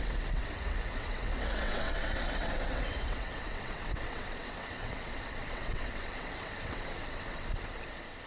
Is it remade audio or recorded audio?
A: remade